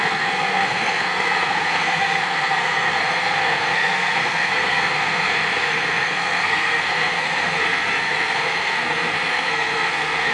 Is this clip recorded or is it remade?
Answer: remade